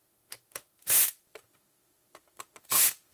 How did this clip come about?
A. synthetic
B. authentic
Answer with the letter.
A